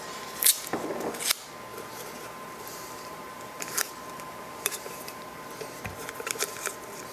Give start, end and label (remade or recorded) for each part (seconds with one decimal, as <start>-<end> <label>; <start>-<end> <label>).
0.0-1.7 recorded; 1.7-5.8 remade; 5.8-7.1 recorded